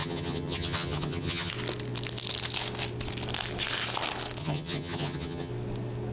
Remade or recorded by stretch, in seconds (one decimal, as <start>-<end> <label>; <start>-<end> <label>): 0.0-1.5 remade; 1.5-4.4 recorded; 4.4-5.5 remade; 5.5-6.1 recorded